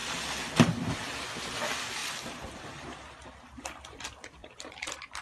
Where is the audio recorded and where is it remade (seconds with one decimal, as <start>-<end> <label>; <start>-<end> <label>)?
0.0-5.2 remade